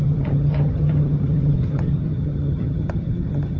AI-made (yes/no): yes